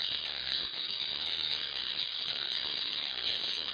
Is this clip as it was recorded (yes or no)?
no